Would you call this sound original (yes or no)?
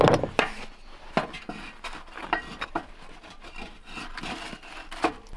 yes